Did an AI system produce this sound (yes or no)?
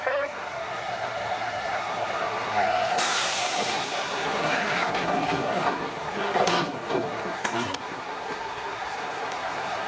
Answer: yes